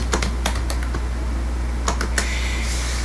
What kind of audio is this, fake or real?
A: real